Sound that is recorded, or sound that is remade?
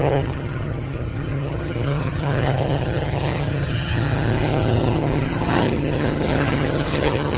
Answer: remade